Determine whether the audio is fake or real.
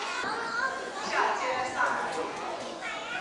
fake